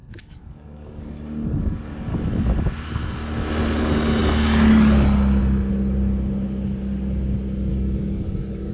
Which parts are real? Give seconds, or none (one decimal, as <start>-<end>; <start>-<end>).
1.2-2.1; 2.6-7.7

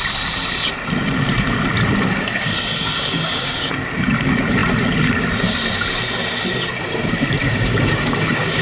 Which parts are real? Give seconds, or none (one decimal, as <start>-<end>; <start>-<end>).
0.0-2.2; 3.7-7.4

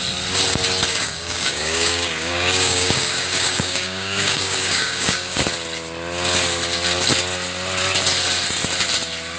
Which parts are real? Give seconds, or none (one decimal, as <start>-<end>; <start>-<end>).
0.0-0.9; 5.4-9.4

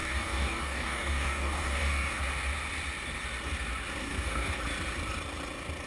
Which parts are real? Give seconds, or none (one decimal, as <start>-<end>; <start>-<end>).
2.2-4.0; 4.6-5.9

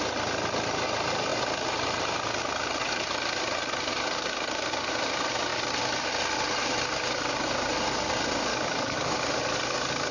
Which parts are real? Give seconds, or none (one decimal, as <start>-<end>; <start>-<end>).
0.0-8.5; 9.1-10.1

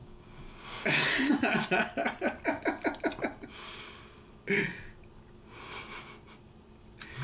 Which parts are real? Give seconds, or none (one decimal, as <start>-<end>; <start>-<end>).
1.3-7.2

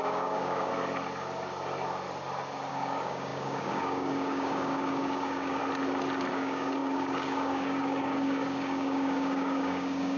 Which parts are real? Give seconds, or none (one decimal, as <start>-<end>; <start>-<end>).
0.7-2.7; 5.6-6.3